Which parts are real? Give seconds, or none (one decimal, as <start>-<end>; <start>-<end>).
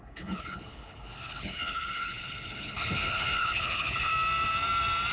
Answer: 4.1-5.1